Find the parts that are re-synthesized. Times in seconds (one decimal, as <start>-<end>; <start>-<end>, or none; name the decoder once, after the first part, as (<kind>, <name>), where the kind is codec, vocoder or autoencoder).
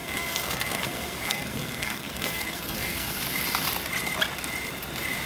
0.0-3.2 (codec, SNAC)